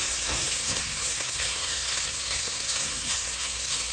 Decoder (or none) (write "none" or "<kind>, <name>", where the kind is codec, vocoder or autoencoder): codec, SNAC